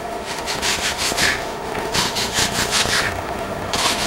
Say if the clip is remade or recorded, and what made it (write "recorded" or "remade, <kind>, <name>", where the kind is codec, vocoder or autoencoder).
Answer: remade, autoencoder, DAC-VAE